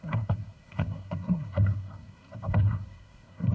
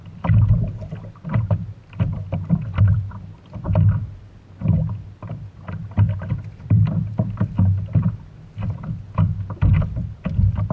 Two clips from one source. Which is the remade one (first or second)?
first